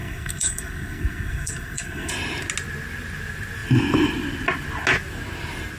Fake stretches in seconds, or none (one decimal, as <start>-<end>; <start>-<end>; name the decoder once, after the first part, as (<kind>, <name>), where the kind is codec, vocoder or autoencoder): 0.0-2.1 (codec, SNAC)